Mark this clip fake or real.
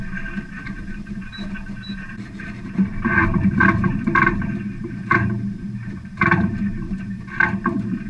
fake